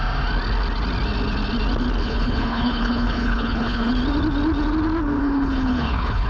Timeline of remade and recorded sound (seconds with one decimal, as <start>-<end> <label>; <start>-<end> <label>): 0.0-2.0 recorded; 2.0-3.9 remade; 3.9-5.2 recorded; 5.2-6.3 remade